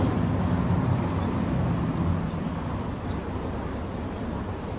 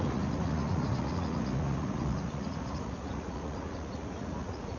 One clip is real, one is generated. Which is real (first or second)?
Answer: first